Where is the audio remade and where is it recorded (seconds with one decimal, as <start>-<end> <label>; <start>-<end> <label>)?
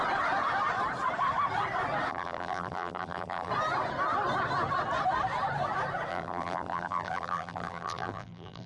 0.0-2.1 recorded; 2.1-3.5 remade; 3.5-6.1 recorded; 6.1-8.7 remade